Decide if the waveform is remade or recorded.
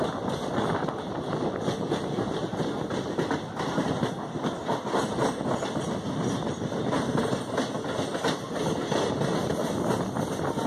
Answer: recorded